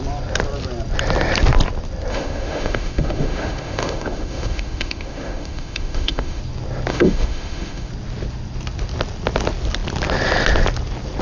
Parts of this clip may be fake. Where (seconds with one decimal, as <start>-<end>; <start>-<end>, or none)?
2.1-6.4; 6.9-7.9